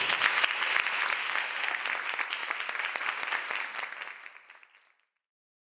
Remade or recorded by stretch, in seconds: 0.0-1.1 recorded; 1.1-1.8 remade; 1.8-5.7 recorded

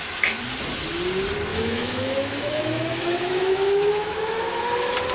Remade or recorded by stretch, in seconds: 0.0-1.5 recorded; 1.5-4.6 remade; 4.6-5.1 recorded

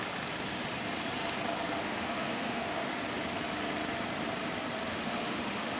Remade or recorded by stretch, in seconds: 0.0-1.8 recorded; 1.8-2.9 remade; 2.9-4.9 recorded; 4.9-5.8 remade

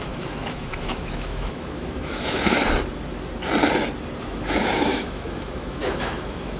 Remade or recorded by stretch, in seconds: 0.0-2.6 remade; 2.6-4.2 recorded; 4.2-6.6 remade

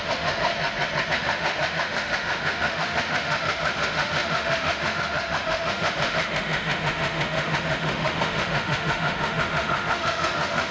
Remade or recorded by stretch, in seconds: 0.0-0.5 remade; 0.5-1.1 recorded; 1.1-10.7 remade

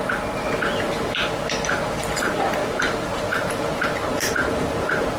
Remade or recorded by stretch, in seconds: 0.0-5.2 recorded

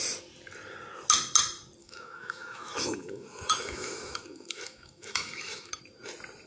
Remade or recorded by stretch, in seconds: 0.0-1.8 recorded; 1.8-5.7 remade; 5.7-6.5 recorded

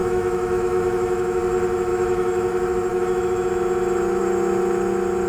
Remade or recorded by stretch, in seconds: 0.0-1.4 remade; 1.4-1.9 recorded; 1.9-2.5 remade; 2.5-2.9 recorded; 2.9-3.5 remade; 3.5-5.3 recorded